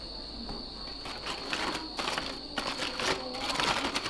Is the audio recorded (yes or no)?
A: yes